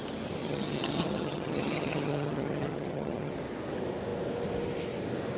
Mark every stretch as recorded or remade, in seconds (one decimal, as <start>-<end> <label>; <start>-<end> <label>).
0.0-0.4 recorded; 0.4-3.3 remade; 3.3-5.4 recorded